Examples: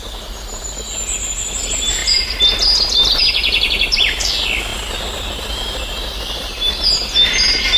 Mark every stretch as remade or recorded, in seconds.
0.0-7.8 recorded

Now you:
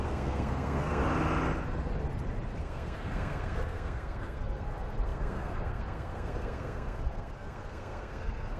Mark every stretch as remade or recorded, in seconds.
0.0-1.0 remade; 1.0-2.6 recorded; 2.6-8.6 remade

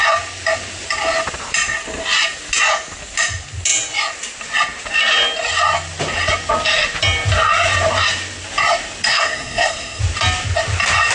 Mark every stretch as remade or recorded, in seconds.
0.0-9.1 recorded; 9.1-10.0 remade; 10.0-11.1 recorded